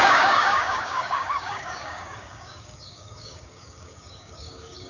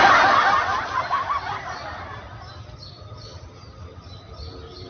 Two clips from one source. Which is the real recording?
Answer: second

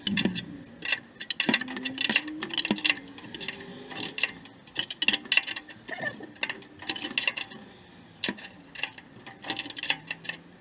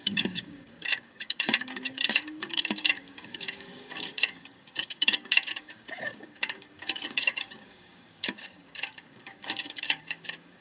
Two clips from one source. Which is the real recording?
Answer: first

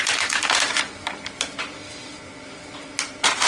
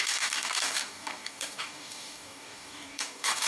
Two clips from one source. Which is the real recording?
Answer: first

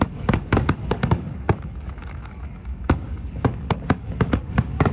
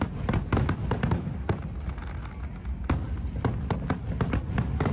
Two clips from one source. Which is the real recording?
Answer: second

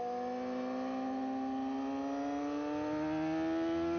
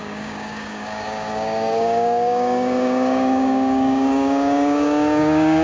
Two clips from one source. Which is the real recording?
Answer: first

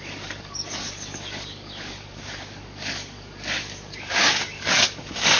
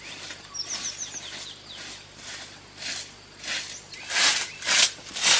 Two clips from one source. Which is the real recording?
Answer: second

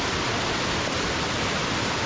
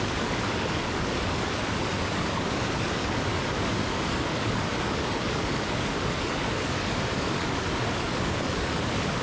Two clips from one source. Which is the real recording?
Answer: first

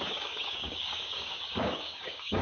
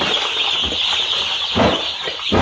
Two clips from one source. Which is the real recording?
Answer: second